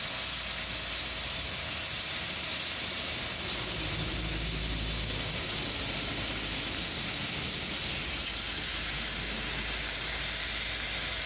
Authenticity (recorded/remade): recorded